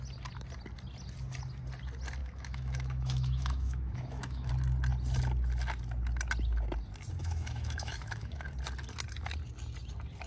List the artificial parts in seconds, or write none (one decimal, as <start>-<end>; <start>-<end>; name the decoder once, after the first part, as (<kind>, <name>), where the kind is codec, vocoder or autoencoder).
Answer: 2.2-4.5 (autoencoder, DAC-VAE); 7.2-8.5